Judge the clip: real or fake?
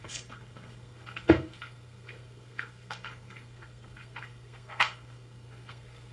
fake